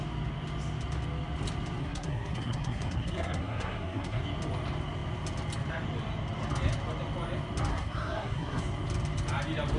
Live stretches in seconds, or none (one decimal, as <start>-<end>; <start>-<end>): 0.0-1.8; 4.2-7.7; 8.6-9.8